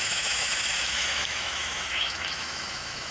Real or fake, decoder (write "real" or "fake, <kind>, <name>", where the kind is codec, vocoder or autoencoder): fake, autoencoder, DAC-VAE